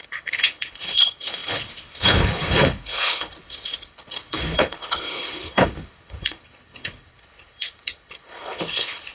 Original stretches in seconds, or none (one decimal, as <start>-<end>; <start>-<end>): none